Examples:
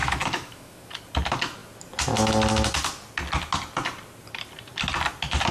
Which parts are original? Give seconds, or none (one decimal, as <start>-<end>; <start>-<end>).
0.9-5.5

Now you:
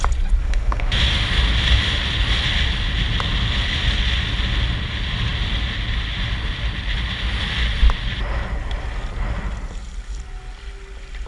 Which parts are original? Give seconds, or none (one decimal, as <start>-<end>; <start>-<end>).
0.0-0.4; 1.0-11.3

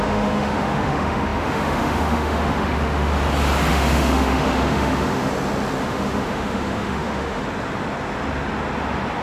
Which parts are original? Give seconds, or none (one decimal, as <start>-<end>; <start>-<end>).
3.1-3.7; 5.3-5.8; 7.4-9.2

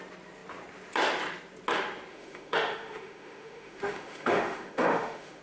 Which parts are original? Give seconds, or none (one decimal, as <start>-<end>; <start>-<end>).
0.0-2.1

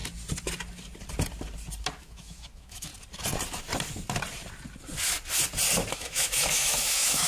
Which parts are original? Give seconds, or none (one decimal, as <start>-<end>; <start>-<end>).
0.0-2.0; 2.9-5.9

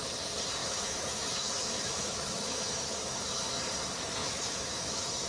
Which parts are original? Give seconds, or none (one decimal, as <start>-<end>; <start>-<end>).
0.0-0.6; 3.6-4.2

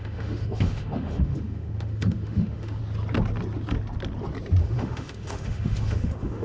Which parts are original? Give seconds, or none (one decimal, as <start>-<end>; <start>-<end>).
2.8-4.6

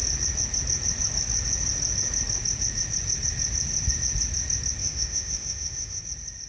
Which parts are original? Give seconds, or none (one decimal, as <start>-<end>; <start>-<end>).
0.0-4.8; 6.0-6.5